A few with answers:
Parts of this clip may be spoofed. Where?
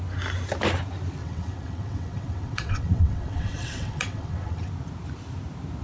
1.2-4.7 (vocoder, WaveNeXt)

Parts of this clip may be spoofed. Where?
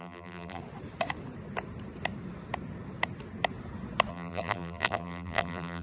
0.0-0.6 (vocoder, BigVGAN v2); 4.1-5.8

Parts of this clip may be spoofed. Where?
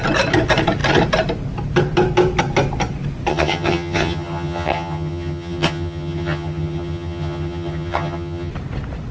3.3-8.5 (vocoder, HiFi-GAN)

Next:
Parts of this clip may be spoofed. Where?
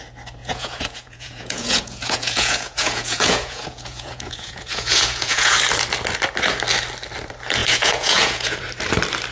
0.4-5.6 (vocoder, Vocos); 7.6-8.6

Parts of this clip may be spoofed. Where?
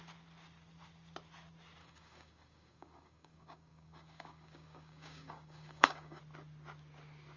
1.8-6.2 (codec, DAC)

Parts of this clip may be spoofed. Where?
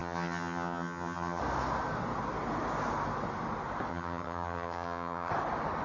0.0-1.4 (vocoder, HiFi-GAN); 3.9-5.3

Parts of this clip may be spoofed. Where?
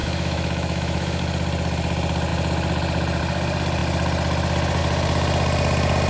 0.0-1.2 (autoencoder, DAC-VAE)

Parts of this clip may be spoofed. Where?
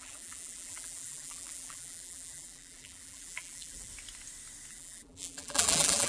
0.0-3.9 (vocoder, BigVGAN v2); 4.7-6.1